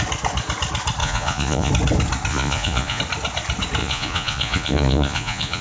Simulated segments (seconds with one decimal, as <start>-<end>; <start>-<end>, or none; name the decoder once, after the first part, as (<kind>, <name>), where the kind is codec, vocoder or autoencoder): 1.0-1.7 (vocoder, Vocos); 2.3-3.0; 3.8-5.6